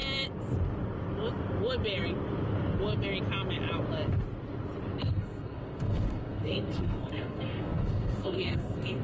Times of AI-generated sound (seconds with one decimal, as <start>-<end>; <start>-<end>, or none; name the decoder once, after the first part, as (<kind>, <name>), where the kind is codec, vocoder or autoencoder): 5.0-9.0 (codec, SNAC)